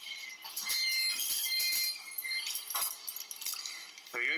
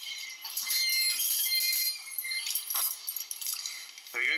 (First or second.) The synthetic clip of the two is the second